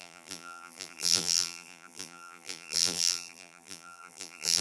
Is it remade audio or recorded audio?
remade